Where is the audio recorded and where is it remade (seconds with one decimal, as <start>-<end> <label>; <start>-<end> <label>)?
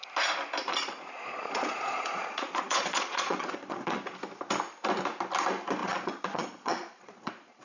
0.0-0.6 recorded; 0.6-4.0 remade; 4.0-5.8 recorded; 5.8-7.6 remade